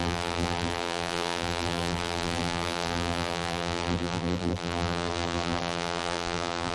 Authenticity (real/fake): fake